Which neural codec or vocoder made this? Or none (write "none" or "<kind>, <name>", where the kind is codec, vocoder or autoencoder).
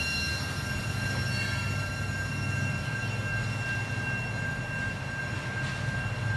none